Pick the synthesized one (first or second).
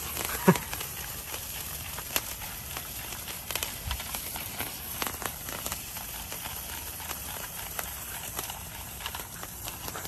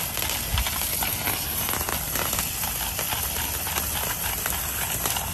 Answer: first